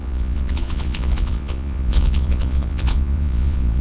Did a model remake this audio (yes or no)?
yes